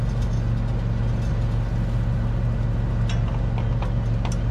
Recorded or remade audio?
recorded